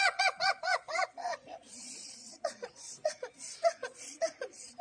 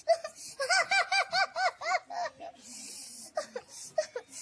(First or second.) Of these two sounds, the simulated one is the first